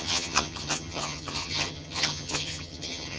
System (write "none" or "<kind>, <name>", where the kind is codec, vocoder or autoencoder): vocoder, HiFi-GAN